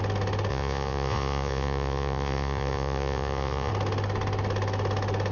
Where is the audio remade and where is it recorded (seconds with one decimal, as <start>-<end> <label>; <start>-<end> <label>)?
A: 0.0-0.5 recorded; 0.5-3.7 remade; 3.7-5.3 recorded